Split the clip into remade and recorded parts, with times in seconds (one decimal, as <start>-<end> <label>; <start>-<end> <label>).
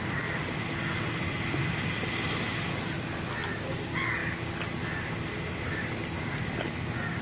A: 0.0-7.2 recorded